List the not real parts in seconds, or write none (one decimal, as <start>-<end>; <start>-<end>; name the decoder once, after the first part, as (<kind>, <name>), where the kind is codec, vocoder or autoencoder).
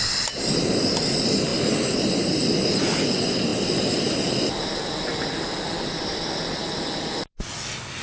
none